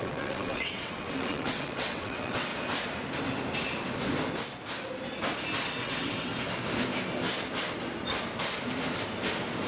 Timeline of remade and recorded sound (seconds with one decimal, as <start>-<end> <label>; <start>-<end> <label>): 0.0-2.5 remade; 2.5-5.7 recorded; 5.7-6.3 remade; 6.3-9.7 recorded